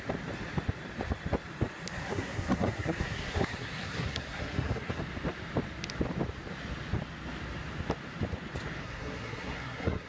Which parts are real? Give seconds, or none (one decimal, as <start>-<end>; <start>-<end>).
0.0-2.0; 5.0-8.8